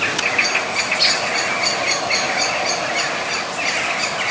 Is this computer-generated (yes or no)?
no